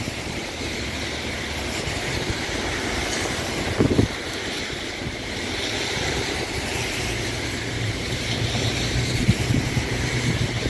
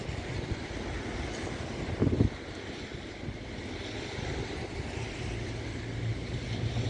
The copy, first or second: first